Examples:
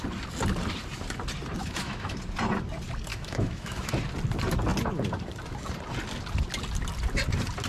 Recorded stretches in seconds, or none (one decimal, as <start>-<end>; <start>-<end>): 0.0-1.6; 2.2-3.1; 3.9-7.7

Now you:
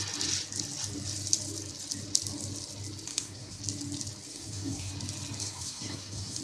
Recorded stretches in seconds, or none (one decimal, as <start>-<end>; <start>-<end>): 0.0-3.1; 3.6-4.3; 4.9-5.4

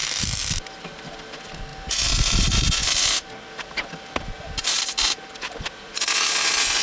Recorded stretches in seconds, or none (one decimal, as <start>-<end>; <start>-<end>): 0.0-6.8